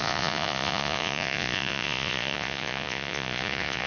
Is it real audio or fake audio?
fake